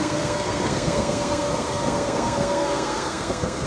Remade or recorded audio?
remade